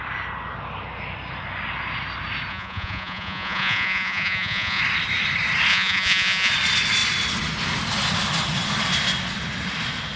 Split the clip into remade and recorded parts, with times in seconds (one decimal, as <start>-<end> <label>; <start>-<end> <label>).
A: 0.0-2.5 recorded; 2.5-4.8 remade; 4.8-5.7 recorded; 5.7-6.5 remade; 6.5-10.2 recorded